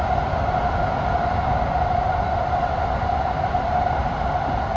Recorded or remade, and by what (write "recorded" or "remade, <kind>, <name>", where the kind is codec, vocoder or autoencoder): recorded